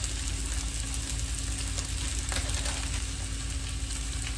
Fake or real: real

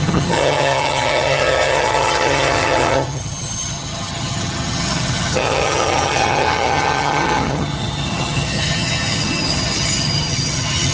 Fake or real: fake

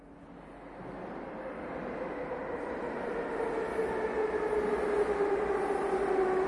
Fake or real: real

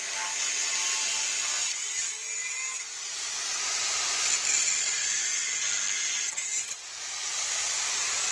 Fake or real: real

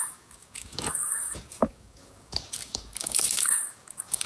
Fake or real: fake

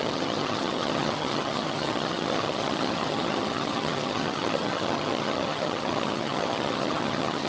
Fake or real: fake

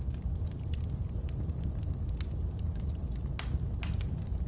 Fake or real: real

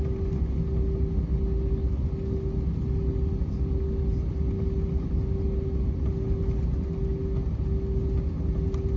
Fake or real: real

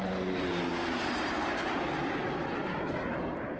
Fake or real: fake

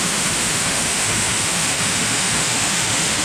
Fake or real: fake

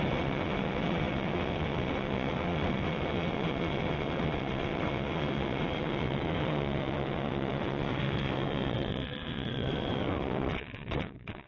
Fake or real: fake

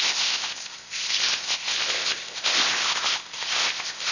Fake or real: fake